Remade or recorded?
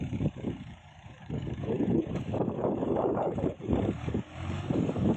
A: remade